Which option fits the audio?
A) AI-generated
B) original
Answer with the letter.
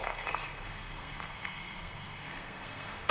A